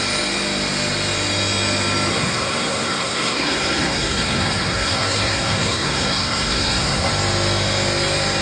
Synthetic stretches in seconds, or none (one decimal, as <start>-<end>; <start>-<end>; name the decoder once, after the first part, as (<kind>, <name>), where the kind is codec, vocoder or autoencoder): 2.1-7.1 (codec, SNAC)